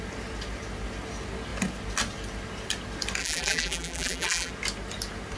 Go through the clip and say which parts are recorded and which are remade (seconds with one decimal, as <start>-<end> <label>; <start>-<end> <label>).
0.0-3.2 recorded; 3.2-4.5 remade; 4.5-5.4 recorded